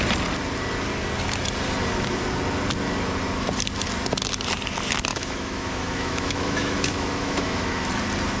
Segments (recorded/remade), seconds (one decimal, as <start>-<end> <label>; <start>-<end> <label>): 0.0-5.1 recorded; 5.1-7.9 remade; 7.9-8.4 recorded